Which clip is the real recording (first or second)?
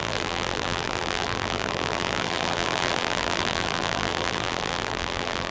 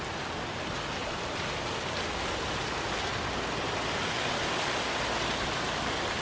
second